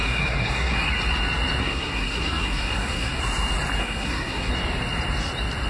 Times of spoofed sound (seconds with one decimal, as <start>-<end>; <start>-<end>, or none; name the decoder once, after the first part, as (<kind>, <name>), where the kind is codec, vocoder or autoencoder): 0.0-0.9 (codec, SNAC); 1.6-3.2; 3.8-4.5